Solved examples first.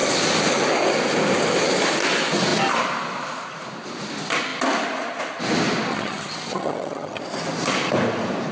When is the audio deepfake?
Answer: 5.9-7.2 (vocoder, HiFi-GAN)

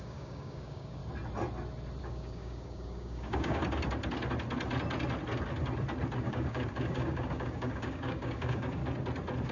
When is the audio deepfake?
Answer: 0.0-1.0 (codec, DAC); 2.0-3.6; 6.2-8.8

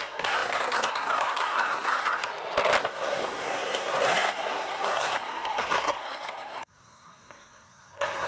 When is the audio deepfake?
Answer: 0.0-2.3 (codec, SNAC); 2.8-8.3

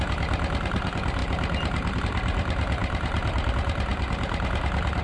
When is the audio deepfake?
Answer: 0.0-1.2 (vocoder, BigVGAN v2); 2.0-5.0

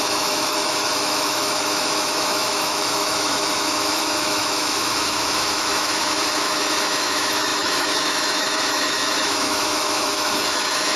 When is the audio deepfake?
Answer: 0.0-11.0 (autoencoder, DAC-VAE)